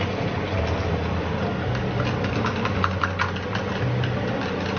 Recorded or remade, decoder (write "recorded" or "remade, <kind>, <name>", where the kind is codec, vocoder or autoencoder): recorded